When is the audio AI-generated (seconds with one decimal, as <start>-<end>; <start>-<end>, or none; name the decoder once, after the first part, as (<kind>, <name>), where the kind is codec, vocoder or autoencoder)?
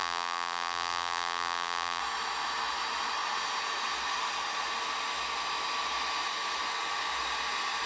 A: 0.0-2.0 (vocoder, BigVGAN v2)